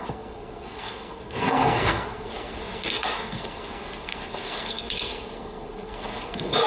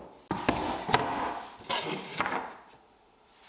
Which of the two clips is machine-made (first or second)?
first